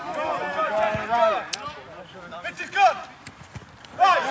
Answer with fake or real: real